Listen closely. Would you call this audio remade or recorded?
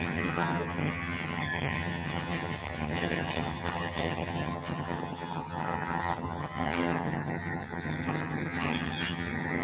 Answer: remade